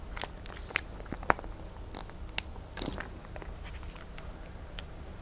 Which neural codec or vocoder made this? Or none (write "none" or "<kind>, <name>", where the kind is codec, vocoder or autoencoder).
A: none